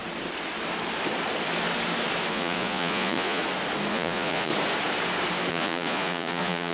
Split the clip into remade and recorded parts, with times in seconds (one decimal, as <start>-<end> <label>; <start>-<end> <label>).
0.0-2.3 recorded; 2.3-3.4 remade; 3.4-3.9 recorded; 3.9-4.5 remade; 4.5-5.5 recorded; 5.5-6.7 remade